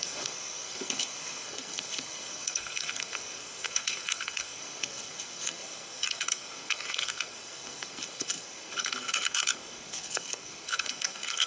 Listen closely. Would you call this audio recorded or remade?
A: remade